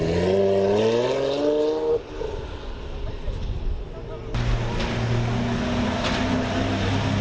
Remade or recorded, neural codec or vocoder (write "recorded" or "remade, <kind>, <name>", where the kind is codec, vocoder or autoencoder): recorded